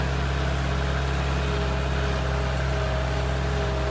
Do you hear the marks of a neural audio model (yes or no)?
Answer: no